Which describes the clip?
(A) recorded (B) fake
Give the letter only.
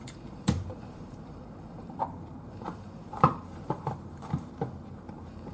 B